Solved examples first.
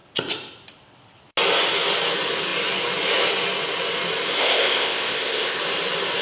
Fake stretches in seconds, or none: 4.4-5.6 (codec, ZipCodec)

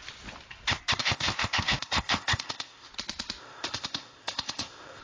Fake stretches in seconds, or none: 1.0-2.9 (codec, ZipCodec); 3.4-5.0

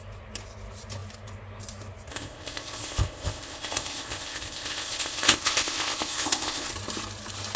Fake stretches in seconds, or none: 2.1-6.7 (codec, ZipCodec)

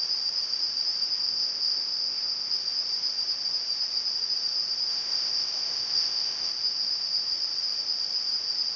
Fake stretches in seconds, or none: 1.2-2.5 (codec, ZipCodec); 4.9-6.5

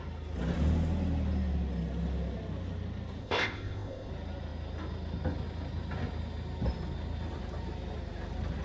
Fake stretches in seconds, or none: 3.2-4.1 (codec, ZipCodec)

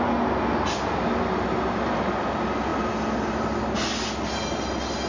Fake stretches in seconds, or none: none